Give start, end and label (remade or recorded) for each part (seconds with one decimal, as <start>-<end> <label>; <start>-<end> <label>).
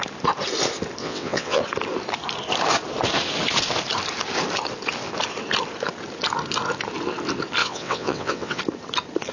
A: 0.0-1.0 recorded; 1.0-1.6 remade; 1.6-7.6 recorded; 7.6-8.6 remade; 8.6-9.3 recorded